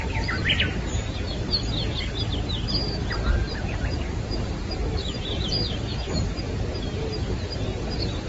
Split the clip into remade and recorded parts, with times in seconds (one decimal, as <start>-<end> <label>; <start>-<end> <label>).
0.0-0.4 remade; 0.4-3.3 recorded; 3.3-8.3 remade

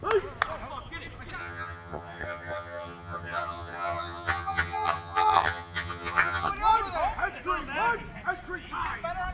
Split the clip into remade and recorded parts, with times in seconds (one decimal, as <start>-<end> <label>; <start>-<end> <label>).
0.0-1.4 recorded; 1.4-6.5 remade; 6.5-9.3 recorded

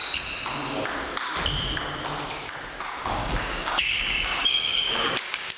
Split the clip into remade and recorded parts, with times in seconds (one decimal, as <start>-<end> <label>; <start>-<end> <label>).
0.0-3.2 recorded; 3.2-5.6 remade

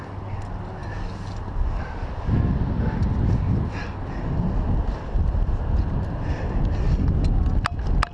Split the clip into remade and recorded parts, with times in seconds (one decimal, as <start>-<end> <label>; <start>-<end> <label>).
0.0-8.1 recorded

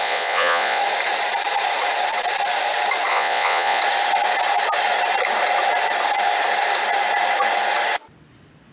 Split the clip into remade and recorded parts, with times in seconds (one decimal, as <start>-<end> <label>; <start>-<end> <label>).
0.0-0.8 remade; 0.8-3.1 recorded; 3.1-3.8 remade; 3.8-8.7 recorded